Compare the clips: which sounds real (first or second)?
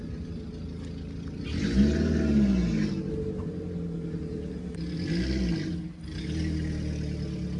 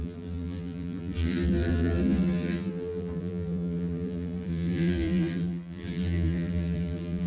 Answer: first